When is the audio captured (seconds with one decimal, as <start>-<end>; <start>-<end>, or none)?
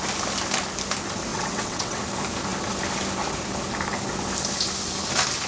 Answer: 0.0-1.3; 2.0-5.5